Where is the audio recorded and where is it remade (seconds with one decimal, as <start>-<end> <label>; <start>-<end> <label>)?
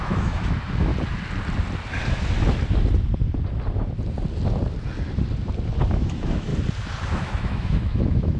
0.0-0.9 remade; 0.9-5.9 recorded; 5.9-6.5 remade; 6.5-7.1 recorded; 7.1-8.4 remade